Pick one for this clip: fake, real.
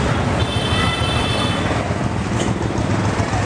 real